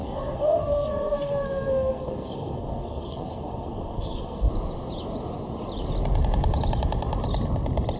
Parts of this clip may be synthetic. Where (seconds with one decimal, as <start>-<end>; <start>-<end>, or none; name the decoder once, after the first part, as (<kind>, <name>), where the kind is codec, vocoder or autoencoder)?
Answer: 0.0-4.5 (codec, SNAC)